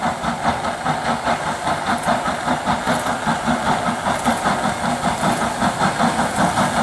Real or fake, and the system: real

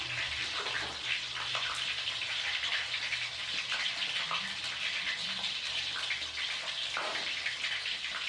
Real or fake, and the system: real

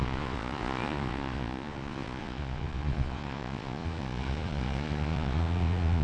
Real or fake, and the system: fake, vocoder, Vocos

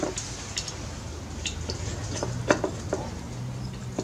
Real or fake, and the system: real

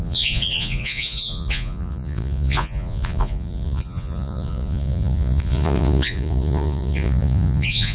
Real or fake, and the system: fake, vocoder, Vocos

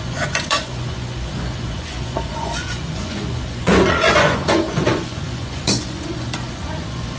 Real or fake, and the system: fake, vocoder, Vocos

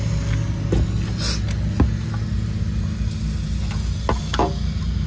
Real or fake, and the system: real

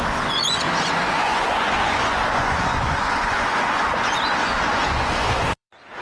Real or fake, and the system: fake, vocoder, Vocos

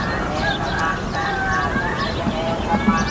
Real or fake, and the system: real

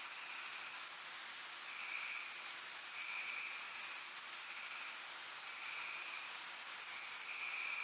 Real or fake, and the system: real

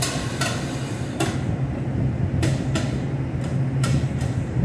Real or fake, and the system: real